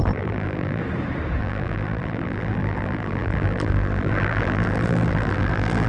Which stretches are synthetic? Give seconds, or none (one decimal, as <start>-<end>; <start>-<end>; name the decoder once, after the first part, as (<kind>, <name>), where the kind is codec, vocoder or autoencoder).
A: 0.0-0.8 (vocoder, BigVGAN v2); 1.4-5.9